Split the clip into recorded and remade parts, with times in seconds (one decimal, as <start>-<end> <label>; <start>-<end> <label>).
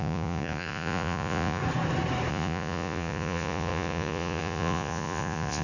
0.0-1.6 remade; 1.6-2.3 recorded; 2.3-5.6 remade